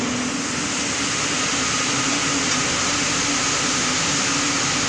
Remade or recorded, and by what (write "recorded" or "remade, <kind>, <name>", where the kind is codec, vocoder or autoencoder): recorded